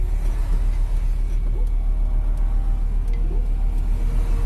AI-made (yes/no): no